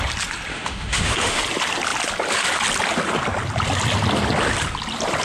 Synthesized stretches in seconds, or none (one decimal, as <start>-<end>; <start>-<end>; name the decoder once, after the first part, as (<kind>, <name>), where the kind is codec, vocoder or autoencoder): 0.5-1.4 (autoencoder, DAC-VAE)